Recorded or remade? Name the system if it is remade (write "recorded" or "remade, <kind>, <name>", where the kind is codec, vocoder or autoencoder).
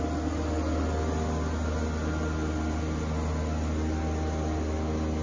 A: recorded